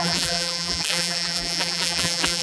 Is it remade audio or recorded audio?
remade